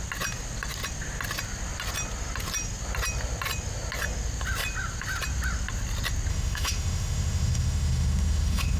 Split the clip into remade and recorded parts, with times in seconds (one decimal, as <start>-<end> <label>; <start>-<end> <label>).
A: 0.0-6.3 recorded; 6.3-8.8 remade